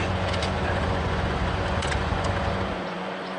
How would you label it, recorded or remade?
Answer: remade